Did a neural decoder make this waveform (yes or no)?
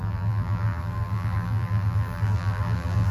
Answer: yes